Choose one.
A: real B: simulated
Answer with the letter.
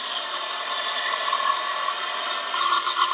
B